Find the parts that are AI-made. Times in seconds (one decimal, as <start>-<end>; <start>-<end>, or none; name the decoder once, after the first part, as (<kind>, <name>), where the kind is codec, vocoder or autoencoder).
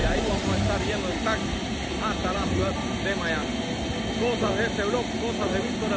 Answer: 0.0-1.0 (vocoder, BigVGAN v2); 2.2-3.0